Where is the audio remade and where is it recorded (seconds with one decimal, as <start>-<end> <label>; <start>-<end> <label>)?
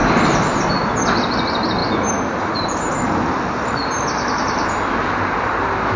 0.0-6.0 recorded